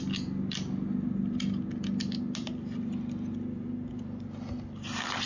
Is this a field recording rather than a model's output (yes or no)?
yes